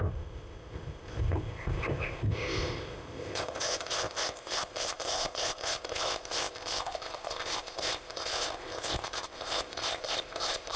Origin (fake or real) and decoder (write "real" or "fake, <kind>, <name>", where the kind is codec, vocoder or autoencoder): fake, codec, ZipCodec